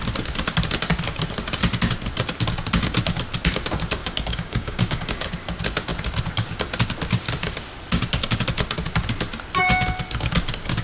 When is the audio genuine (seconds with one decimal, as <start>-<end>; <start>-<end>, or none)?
0.0-4.0; 5.3-10.8